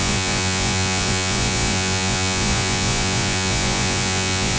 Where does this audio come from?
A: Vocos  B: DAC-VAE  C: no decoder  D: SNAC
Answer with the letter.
A